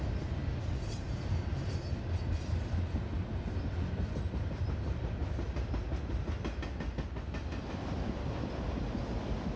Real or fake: real